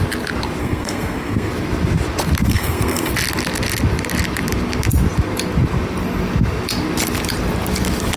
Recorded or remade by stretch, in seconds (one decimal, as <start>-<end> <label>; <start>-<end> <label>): 0.0-0.6 recorded; 0.6-1.5 remade; 1.5-2.5 recorded; 2.5-3.1 remade; 3.1-8.2 recorded

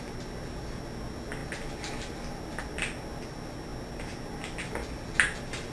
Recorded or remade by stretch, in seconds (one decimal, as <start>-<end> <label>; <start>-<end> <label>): 0.0-5.7 recorded

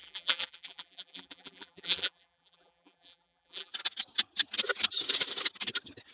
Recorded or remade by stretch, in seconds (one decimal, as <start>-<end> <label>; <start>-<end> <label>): 0.0-3.7 remade; 3.7-6.1 recorded